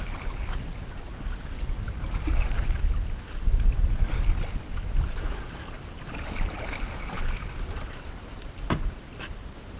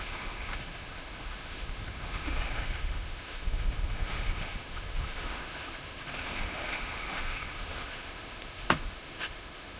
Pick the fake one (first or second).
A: second